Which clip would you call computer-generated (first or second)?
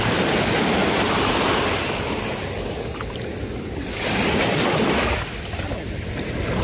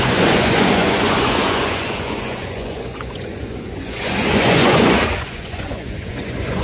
second